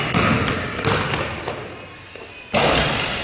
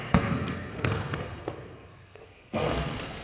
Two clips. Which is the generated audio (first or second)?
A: second